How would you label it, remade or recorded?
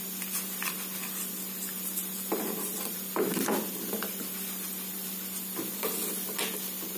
remade